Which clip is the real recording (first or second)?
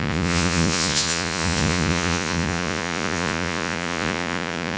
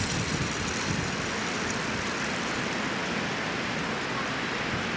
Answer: second